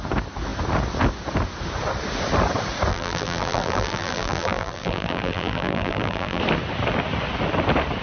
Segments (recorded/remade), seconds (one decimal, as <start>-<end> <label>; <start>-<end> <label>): 0.0-2.9 recorded; 2.9-6.4 remade; 6.4-8.0 recorded